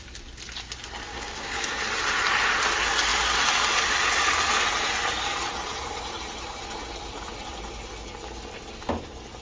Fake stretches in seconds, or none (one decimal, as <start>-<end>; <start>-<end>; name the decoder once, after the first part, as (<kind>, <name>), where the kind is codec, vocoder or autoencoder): 1.1-1.8 (codec, DAC)